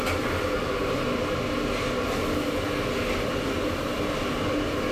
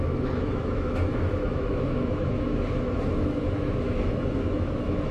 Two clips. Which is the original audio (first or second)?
first